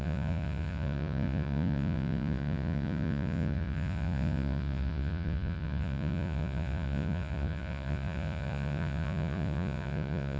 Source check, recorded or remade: remade